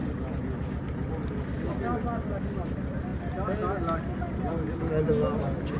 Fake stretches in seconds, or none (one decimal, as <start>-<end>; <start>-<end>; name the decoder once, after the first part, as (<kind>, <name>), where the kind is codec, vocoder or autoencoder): none